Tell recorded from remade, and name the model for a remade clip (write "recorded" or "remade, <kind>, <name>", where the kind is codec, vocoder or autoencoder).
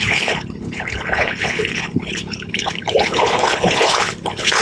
remade, codec, HILCodec